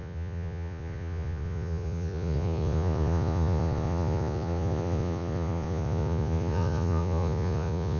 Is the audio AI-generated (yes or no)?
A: yes